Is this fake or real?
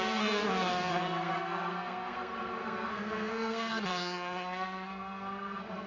fake